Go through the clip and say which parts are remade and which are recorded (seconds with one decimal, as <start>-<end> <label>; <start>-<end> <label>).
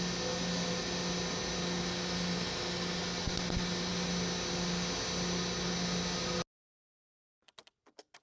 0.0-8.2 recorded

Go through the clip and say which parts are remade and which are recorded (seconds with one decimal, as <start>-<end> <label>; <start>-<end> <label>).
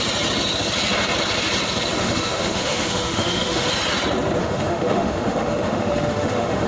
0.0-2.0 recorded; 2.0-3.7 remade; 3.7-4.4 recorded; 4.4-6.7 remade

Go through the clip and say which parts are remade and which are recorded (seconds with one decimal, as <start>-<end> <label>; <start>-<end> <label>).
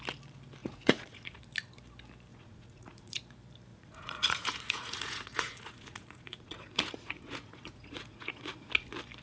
0.0-0.6 recorded; 0.6-1.4 remade; 1.4-2.3 recorded; 2.3-3.2 remade; 3.2-3.7 recorded; 3.7-8.7 remade; 8.7-9.2 recorded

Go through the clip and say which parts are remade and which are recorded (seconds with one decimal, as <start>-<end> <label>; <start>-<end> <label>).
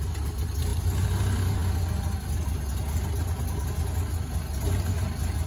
0.0-5.5 recorded